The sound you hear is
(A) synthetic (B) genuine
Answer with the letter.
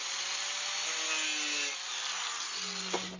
B